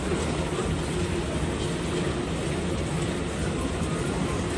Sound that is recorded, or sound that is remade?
recorded